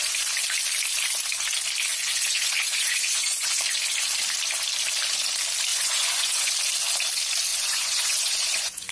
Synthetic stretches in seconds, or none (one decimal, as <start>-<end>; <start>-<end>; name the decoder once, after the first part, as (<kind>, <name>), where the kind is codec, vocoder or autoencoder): 1.9-3.6 (vocoder, Vocos); 5.7-6.5; 7.5-8.9